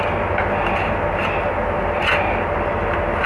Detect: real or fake real